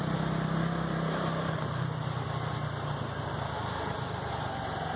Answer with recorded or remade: recorded